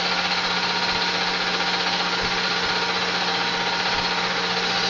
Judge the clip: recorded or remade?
recorded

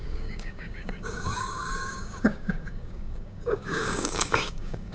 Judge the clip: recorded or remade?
remade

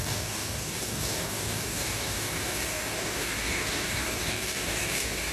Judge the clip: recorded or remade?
remade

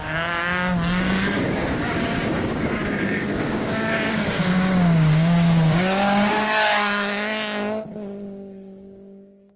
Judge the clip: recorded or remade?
remade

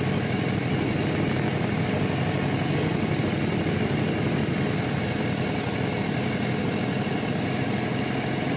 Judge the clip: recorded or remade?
recorded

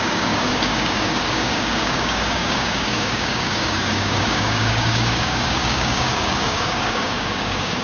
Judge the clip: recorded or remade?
remade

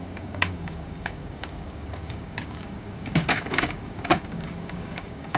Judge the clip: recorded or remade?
remade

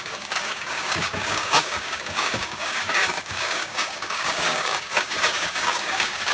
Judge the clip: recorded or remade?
remade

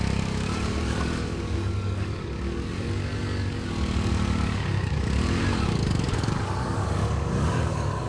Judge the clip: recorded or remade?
remade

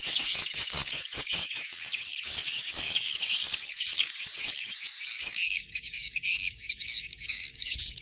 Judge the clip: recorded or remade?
remade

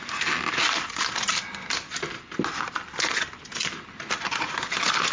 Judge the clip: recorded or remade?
recorded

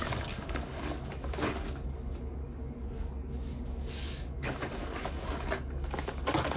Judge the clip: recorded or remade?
remade